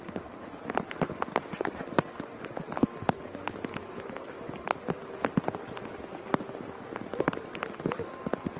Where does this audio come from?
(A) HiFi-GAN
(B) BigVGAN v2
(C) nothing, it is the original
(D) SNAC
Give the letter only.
C